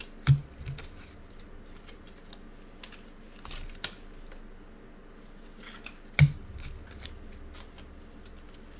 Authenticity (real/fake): real